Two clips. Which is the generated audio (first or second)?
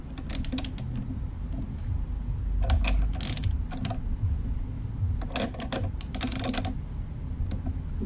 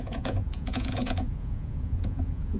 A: second